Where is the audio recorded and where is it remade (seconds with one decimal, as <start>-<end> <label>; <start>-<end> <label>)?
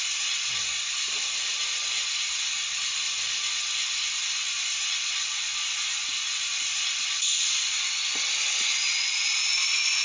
0.0-10.0 recorded